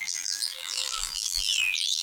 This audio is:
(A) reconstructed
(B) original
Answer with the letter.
A